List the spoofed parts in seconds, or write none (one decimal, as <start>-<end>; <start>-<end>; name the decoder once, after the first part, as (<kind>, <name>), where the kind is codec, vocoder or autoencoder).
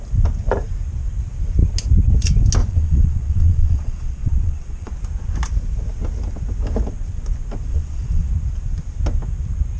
2.6-4.9 (vocoder, Vocos); 7.7-8.3